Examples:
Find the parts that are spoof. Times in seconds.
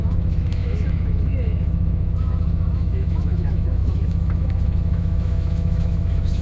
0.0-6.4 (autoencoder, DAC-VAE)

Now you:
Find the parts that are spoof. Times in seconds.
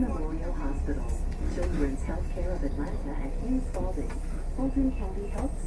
none